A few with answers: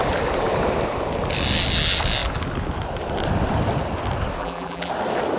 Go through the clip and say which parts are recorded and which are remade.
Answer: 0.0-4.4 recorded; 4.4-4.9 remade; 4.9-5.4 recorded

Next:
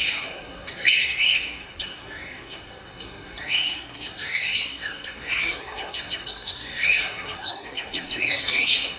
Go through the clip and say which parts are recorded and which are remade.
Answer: 0.0-9.0 remade

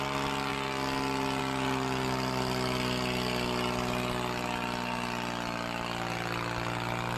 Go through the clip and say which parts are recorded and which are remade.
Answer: 0.0-7.2 recorded

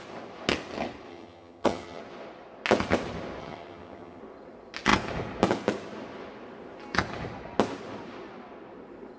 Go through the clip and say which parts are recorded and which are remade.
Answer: 0.0-1.1 recorded; 1.1-2.0 remade; 2.0-3.4 recorded; 3.4-4.2 remade; 4.2-9.2 recorded

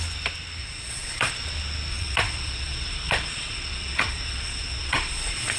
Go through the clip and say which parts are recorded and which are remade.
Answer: 0.0-0.6 recorded; 0.6-1.3 remade; 1.3-1.9 recorded; 1.9-5.6 remade

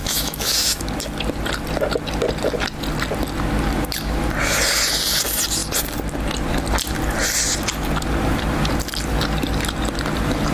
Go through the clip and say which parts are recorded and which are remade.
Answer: 0.0-0.8 remade; 0.8-10.5 recorded